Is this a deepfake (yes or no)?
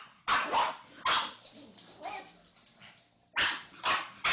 no